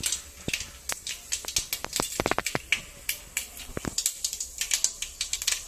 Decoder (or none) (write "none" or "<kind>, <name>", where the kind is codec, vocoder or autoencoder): none